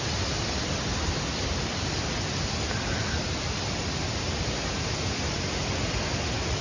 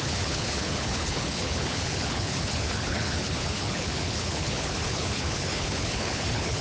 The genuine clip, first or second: first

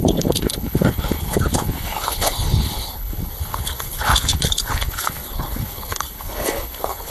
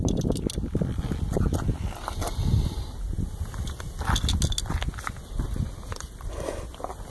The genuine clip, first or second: second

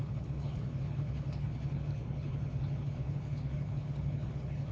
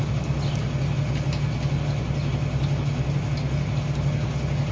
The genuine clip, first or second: second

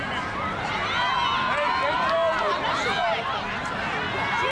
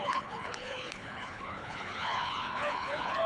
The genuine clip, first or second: first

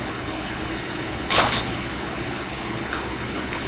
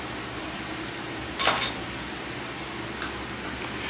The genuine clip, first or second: second